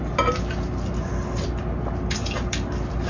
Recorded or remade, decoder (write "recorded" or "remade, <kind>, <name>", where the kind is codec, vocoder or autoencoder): recorded